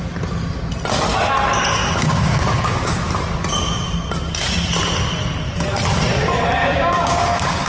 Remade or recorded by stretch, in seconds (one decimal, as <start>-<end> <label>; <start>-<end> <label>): 0.0-1.8 recorded; 1.8-3.1 remade; 3.1-6.6 recorded; 6.6-7.7 remade